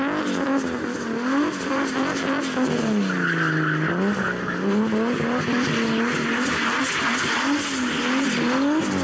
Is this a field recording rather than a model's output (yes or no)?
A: yes